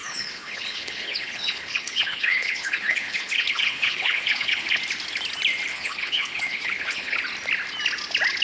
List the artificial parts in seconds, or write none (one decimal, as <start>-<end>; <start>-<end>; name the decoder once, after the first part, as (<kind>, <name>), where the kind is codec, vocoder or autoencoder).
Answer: 0.0-4.8 (codec, HILCodec); 5.7-7.2